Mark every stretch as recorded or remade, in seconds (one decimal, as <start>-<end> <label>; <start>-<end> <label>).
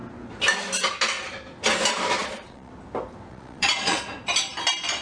0.0-2.2 recorded; 2.2-2.7 remade; 2.7-3.3 recorded; 3.3-4.0 remade; 4.0-5.0 recorded